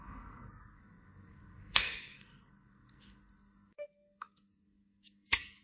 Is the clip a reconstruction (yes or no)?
yes